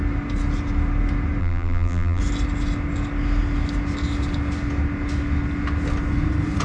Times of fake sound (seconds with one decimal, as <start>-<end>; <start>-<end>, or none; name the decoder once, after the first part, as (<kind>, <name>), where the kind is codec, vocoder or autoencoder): 1.4-2.2 (vocoder, BigVGAN v2)